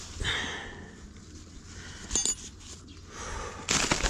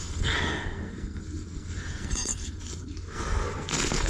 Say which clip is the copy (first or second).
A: second